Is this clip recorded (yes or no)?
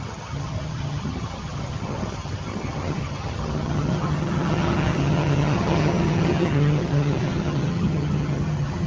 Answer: no